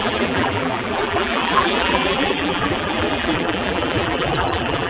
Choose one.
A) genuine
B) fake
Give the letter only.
B